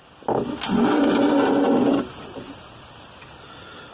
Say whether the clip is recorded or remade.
recorded